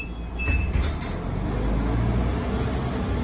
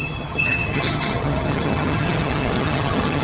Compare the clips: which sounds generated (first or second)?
second